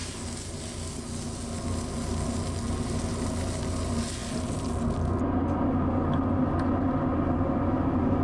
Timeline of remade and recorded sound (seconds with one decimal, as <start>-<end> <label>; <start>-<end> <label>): 0.0-8.2 recorded